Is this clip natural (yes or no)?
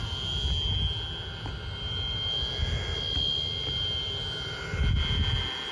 yes